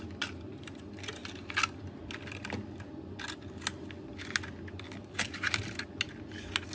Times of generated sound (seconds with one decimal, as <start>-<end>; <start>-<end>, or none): none